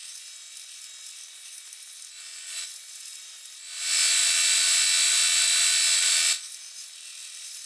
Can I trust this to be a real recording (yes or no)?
yes